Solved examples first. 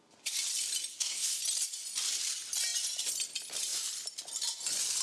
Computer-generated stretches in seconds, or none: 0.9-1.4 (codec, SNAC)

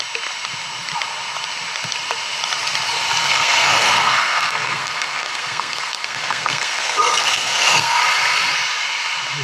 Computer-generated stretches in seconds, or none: 3.2-8.0 (codec, SNAC)

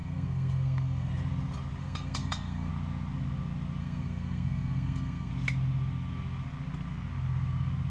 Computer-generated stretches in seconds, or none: 0.0-1.1 (codec, SNAC); 1.8-2.7; 3.8-5.3